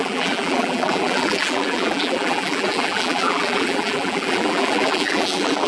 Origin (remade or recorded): remade